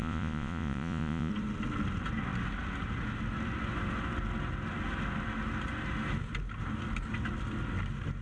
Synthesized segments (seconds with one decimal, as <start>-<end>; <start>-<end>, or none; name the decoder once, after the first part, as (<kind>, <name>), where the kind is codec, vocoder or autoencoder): 0.0-1.3 (vocoder, Vocos)